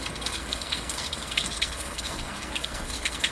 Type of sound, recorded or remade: remade